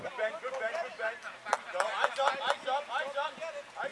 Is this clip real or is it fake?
real